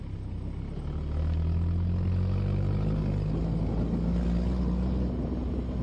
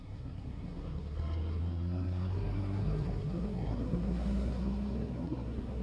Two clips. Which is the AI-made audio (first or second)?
second